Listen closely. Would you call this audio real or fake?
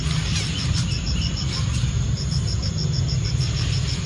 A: real